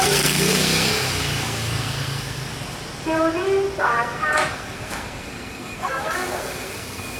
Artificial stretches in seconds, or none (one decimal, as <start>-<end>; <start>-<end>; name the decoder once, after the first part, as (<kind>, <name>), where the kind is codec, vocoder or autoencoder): 0.0-2.5 (codec, SNAC); 3.8-7.2